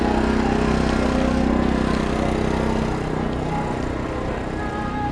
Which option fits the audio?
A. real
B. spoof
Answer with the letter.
A